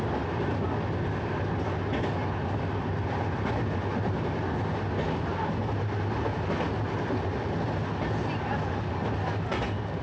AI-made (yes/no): no